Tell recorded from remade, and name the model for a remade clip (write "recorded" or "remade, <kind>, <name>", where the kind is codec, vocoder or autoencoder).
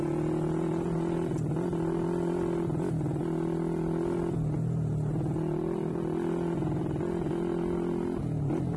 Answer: recorded